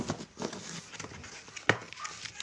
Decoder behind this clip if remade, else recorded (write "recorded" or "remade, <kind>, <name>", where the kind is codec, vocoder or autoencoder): recorded